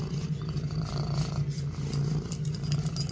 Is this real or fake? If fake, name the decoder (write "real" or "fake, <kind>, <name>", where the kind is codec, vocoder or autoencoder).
real